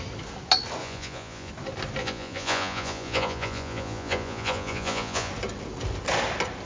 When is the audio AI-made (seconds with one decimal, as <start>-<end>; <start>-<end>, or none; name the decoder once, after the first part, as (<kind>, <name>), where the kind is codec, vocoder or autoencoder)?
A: 0.8-1.5 (vocoder, Vocos); 2.0-5.3